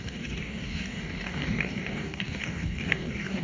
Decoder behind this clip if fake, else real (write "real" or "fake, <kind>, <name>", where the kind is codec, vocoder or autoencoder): fake, codec, DAC